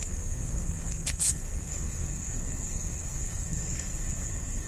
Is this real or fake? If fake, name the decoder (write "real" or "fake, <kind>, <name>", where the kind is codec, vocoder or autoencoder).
fake, codec, SNAC